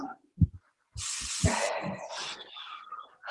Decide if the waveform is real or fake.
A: real